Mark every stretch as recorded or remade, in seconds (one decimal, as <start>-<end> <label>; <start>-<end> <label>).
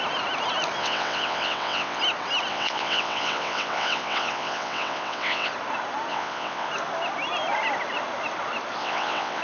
0.0-0.8 recorded; 0.8-2.0 remade; 2.0-2.5 recorded; 2.5-5.5 remade; 5.5-6.1 recorded; 6.1-6.7 remade; 6.7-8.8 recorded; 8.8-9.4 remade